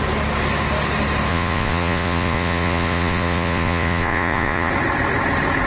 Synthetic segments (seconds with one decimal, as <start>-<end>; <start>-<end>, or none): 1.3-4.7